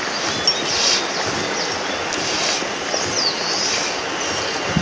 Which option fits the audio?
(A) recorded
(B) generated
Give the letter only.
A